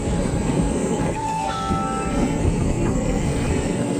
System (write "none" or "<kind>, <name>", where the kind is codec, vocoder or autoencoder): codec, SNAC